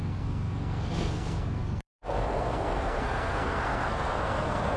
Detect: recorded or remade remade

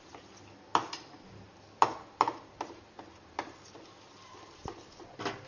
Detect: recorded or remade recorded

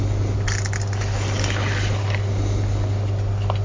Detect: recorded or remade recorded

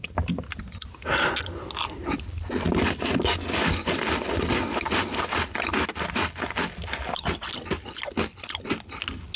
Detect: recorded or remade recorded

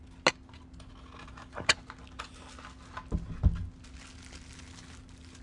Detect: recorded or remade recorded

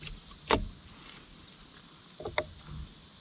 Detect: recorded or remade recorded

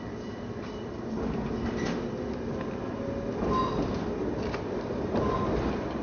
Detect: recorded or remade recorded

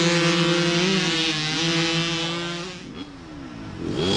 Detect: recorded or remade recorded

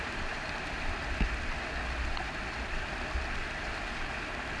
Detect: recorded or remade recorded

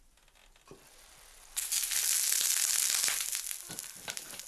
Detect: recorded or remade recorded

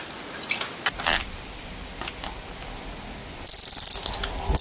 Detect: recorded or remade recorded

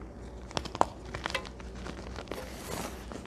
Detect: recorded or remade recorded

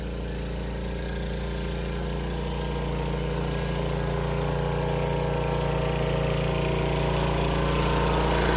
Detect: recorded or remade recorded